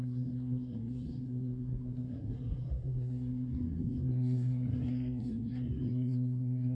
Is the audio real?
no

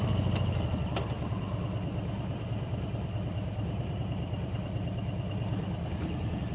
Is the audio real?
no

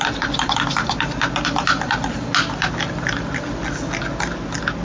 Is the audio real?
yes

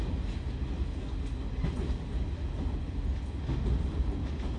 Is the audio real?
yes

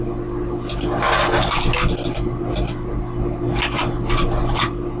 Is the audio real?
yes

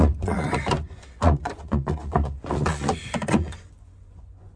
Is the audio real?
no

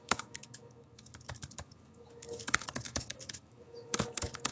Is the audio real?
no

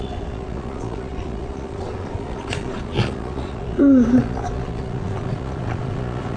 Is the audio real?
no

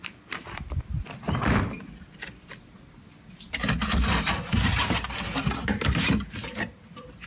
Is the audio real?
no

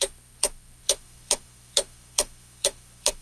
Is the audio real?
no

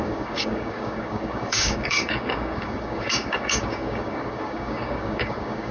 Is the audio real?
no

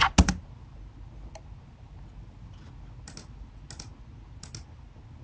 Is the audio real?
yes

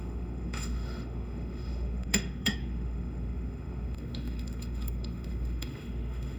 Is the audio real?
no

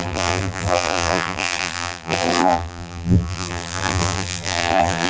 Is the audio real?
no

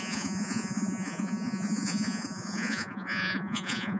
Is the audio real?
no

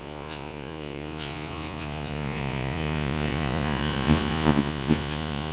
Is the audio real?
no